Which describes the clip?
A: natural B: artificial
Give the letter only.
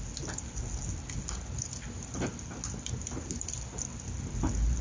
A